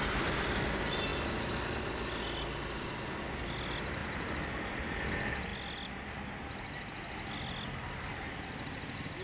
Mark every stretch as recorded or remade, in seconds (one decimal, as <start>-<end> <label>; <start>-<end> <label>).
0.0-4.0 recorded; 4.0-5.0 remade; 5.0-9.2 recorded